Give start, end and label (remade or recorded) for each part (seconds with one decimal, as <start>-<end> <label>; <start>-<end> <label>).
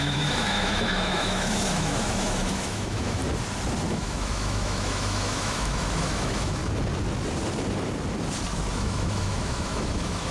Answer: 0.0-3.2 remade; 3.2-3.9 recorded; 3.9-6.6 remade; 6.6-8.7 recorded; 8.7-10.3 remade